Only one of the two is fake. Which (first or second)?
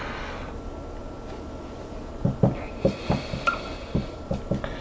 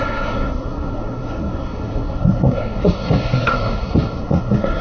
second